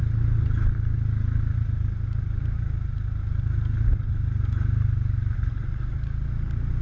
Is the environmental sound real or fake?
real